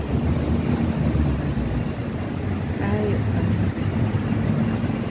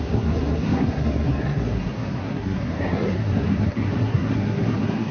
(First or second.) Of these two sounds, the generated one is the second